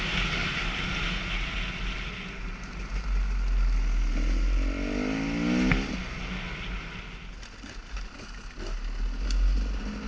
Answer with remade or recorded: recorded